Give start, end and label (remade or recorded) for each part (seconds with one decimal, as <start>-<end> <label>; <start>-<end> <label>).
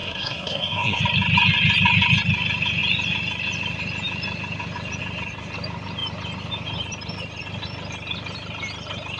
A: 0.0-1.0 remade; 1.0-9.2 recorded